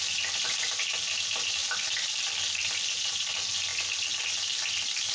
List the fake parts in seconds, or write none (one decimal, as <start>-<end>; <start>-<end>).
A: none